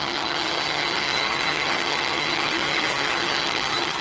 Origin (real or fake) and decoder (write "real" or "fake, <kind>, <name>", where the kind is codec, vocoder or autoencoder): fake, vocoder, HiFi-GAN